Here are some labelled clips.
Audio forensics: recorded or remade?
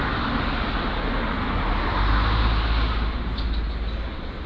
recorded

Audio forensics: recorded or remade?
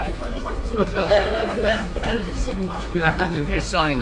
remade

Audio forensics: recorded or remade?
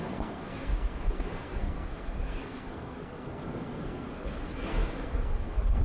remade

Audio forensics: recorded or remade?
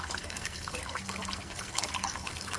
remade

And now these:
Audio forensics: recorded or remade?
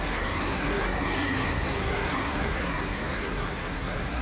remade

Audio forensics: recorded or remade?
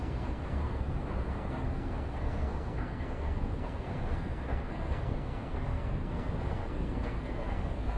remade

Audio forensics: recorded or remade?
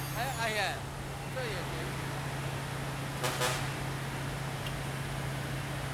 recorded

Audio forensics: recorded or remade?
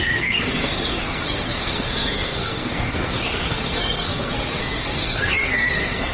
remade